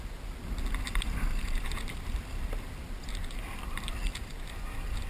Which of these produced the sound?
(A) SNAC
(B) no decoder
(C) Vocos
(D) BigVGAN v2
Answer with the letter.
B